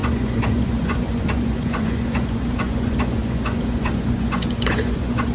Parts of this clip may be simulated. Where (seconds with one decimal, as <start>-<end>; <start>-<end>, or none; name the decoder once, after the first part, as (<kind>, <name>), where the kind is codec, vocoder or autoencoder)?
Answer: 0.0-5.3 (vocoder, Vocos)